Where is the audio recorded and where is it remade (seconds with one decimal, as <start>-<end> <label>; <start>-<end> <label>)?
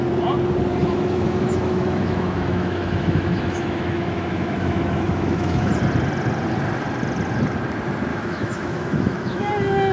0.0-0.8 recorded; 0.8-5.7 remade; 5.7-8.1 recorded; 8.1-9.5 remade; 9.5-9.9 recorded